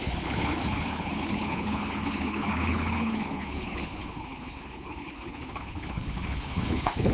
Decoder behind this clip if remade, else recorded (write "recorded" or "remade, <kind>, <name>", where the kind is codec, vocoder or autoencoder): remade, codec, HILCodec